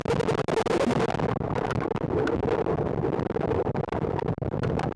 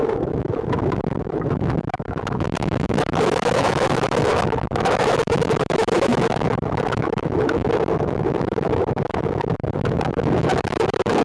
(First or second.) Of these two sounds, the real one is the first